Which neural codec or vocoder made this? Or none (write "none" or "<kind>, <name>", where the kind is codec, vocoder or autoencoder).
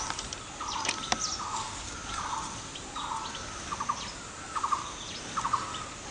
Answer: none